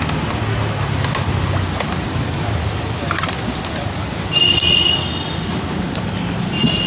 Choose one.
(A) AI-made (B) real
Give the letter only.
B